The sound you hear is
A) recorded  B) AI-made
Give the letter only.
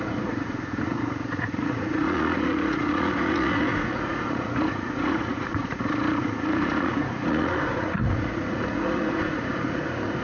B